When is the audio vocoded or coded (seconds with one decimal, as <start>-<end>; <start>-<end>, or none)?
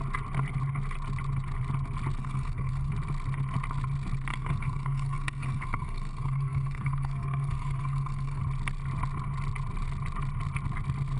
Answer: 2.2-2.9; 4.3-8.4